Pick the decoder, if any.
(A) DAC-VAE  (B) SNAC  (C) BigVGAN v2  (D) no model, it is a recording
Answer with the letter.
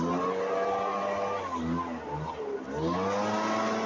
D